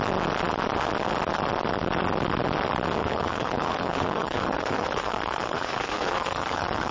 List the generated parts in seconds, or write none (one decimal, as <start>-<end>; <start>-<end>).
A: 3.0-6.9